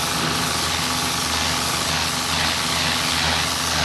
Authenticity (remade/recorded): recorded